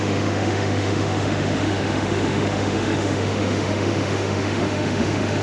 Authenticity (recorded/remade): remade